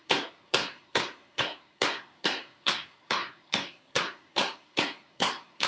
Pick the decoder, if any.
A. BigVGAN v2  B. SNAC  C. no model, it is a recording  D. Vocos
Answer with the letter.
B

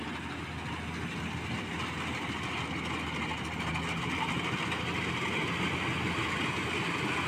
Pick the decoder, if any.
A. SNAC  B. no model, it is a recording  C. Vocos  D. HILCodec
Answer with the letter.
B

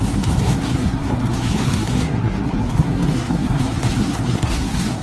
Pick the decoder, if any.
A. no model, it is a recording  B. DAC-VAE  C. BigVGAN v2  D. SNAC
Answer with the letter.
D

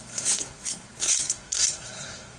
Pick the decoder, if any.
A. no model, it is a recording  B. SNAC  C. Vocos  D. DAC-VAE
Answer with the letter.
B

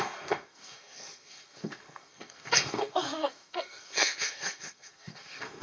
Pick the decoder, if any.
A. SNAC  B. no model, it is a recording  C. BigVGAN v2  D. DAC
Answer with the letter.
A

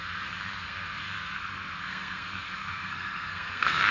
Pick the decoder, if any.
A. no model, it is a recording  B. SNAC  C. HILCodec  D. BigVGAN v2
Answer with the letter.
B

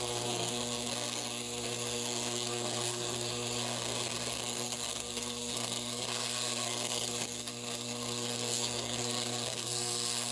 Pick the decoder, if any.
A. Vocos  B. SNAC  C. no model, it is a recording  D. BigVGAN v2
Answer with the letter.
B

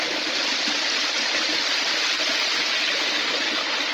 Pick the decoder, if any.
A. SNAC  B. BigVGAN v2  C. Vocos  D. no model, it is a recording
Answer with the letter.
D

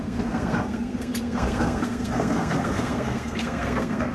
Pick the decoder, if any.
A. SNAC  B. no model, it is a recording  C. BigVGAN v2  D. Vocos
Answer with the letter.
A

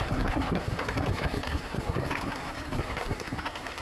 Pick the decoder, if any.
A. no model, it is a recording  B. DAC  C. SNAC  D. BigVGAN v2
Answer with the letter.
C